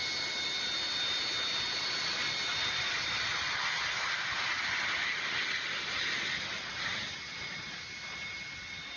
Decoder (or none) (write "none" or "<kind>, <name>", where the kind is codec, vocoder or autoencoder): none